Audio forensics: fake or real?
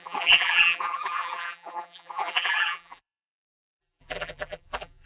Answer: fake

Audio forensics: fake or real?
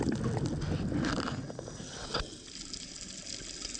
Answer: real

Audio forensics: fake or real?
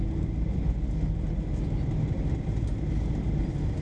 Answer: real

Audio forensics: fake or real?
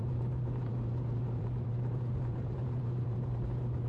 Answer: fake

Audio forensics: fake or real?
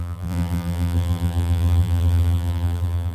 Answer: fake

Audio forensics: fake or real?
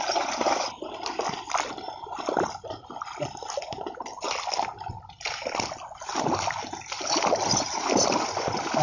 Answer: real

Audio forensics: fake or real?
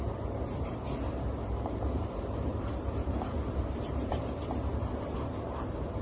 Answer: fake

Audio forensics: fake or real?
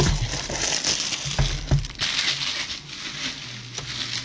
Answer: real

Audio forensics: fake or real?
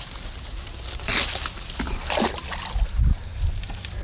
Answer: real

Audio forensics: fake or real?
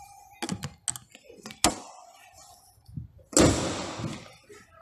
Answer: real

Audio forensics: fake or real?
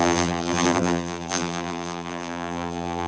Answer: fake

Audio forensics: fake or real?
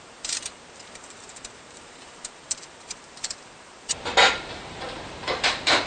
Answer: fake